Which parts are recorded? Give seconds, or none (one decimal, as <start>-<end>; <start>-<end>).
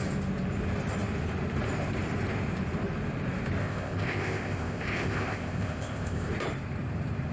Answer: 0.0-3.6; 6.3-7.3